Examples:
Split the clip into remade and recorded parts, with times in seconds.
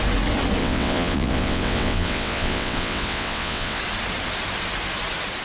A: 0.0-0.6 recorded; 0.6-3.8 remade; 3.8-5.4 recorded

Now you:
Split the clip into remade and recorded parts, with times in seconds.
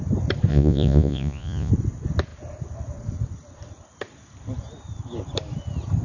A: 0.0-0.5 recorded; 0.5-1.7 remade; 1.7-6.0 recorded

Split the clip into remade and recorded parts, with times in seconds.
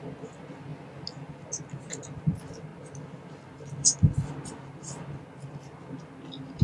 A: 0.0-6.6 recorded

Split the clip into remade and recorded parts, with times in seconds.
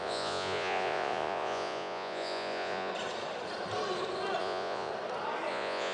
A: 0.0-2.9 remade; 2.9-4.4 recorded; 4.4-4.9 remade; 4.9-5.5 recorded; 5.5-5.9 remade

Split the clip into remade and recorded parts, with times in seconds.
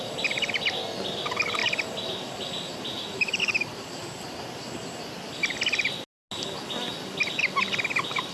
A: 0.0-8.3 recorded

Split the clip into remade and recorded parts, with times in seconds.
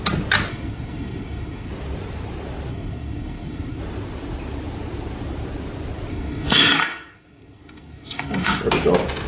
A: 0.0-0.5 recorded; 0.5-1.7 remade; 1.7-2.7 recorded; 2.7-3.8 remade; 3.8-6.1 recorded; 6.1-8.6 remade; 8.6-9.3 recorded